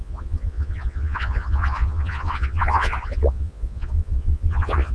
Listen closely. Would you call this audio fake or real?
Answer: fake